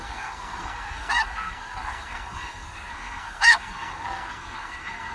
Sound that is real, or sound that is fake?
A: fake